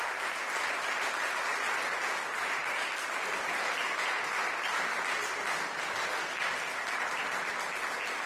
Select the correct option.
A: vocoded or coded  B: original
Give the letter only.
B